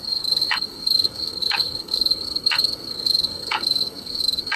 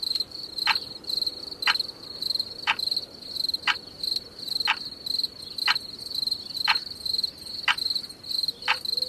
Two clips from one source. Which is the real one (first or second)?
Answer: second